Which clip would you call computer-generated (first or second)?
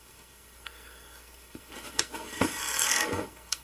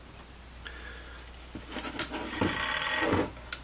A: first